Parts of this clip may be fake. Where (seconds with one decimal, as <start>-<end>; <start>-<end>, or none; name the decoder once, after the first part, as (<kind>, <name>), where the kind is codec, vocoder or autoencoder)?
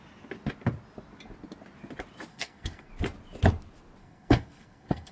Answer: 2.3-2.9 (codec, SNAC); 4.0-5.1